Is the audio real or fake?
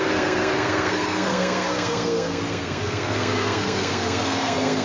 fake